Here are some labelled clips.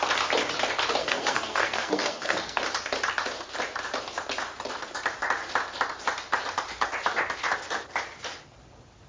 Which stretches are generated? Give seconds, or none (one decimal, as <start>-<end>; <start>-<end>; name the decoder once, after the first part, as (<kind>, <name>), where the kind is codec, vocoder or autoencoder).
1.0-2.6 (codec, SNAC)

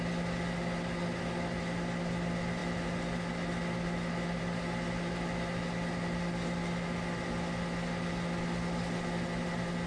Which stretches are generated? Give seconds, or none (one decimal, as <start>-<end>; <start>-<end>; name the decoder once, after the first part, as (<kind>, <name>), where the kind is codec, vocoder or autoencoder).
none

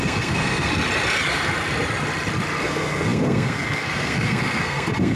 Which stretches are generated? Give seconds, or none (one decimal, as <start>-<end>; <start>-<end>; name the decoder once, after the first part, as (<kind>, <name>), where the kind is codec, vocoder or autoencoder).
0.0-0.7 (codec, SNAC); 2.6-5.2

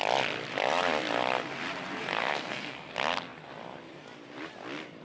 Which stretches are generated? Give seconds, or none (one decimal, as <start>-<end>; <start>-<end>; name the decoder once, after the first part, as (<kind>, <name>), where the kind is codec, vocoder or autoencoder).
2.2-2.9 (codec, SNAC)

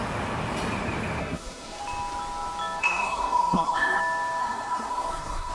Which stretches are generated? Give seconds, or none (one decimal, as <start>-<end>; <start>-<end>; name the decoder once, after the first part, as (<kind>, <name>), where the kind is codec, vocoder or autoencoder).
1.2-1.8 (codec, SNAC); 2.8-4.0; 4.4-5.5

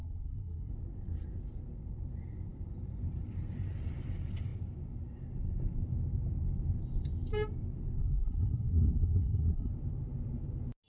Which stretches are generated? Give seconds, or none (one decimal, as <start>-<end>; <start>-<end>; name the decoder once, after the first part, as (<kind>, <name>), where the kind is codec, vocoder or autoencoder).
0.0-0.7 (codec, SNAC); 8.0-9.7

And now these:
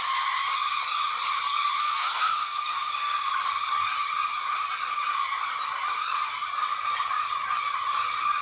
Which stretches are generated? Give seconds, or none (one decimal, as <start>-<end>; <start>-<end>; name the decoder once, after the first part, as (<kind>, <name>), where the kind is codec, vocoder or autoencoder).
1.8-3.3 (codec, SNAC)

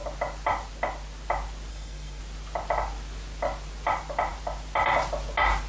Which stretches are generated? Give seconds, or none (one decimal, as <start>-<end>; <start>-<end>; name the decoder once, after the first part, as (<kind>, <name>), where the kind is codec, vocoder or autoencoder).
1.7-2.2 (codec, SNAC)